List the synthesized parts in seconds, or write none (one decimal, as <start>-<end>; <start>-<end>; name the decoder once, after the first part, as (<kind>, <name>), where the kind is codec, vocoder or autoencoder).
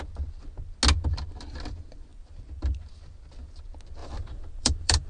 2.1-2.9 (vocoder, BigVGAN v2); 4.0-5.1